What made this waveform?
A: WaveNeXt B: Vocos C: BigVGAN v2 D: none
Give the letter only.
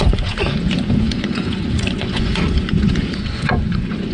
B